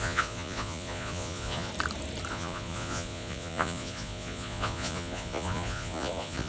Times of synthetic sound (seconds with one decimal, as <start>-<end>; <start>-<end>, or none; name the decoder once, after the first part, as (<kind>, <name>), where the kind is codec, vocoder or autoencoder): 0.0-1.7 (vocoder, Vocos); 2.3-6.5